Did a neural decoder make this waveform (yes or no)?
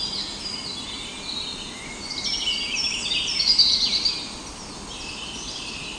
no